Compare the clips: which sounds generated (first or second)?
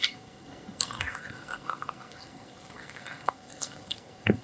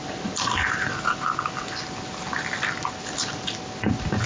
first